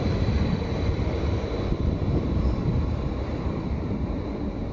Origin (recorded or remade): remade